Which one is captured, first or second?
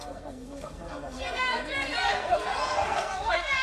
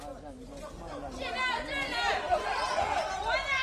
second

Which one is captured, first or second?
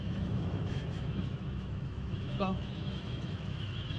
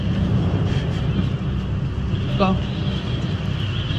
second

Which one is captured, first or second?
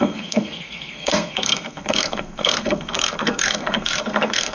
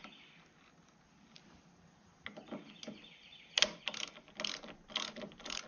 second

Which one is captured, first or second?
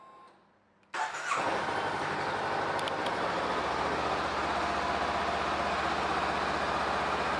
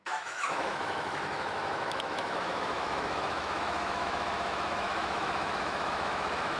first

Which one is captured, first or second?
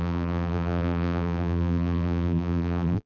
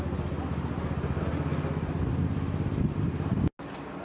second